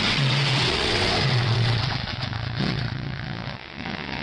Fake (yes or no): yes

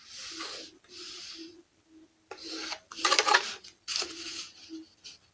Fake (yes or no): no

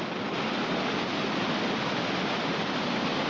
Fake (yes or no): no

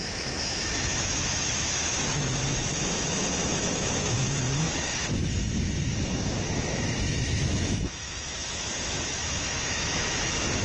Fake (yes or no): yes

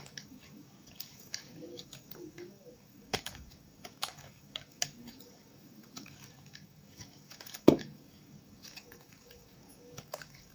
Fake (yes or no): yes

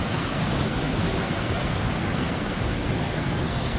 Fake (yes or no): yes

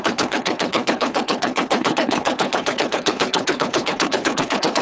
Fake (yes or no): yes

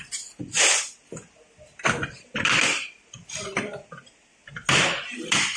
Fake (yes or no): no